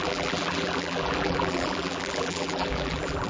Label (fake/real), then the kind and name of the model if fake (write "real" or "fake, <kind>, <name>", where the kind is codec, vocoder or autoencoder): fake, vocoder, BigVGAN v2